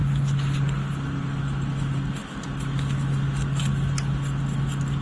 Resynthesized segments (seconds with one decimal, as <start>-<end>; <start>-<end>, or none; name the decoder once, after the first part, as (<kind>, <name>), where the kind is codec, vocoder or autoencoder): none